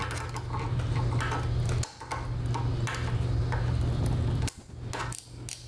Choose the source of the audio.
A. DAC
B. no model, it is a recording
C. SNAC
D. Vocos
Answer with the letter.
B